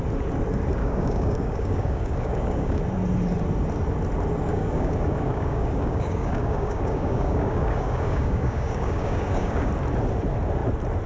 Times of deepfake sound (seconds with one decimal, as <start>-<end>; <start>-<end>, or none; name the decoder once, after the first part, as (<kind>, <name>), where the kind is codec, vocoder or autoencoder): 0.8-2.8 (codec, DAC); 4.5-9.7